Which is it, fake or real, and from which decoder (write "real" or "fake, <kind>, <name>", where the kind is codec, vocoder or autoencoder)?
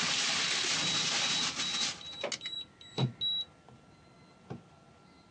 real